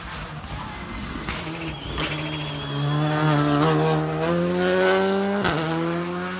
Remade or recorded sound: recorded